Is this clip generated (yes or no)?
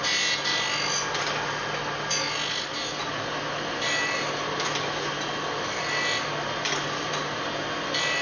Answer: no